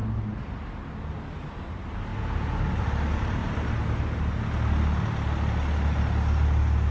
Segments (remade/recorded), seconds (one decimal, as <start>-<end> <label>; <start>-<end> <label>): 0.0-2.1 recorded; 2.1-2.6 remade; 2.6-6.9 recorded